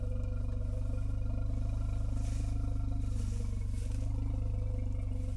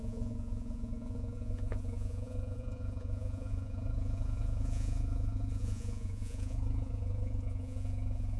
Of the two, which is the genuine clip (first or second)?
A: first